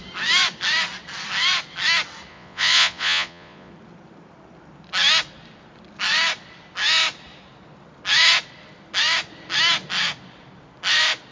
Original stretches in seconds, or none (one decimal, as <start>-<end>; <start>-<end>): 0.0-2.3; 3.7-11.3